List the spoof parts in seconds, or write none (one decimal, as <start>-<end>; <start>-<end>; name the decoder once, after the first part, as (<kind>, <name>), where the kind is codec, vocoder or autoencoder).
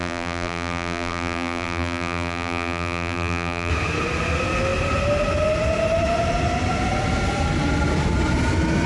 0.0-3.7 (vocoder, BigVGAN v2)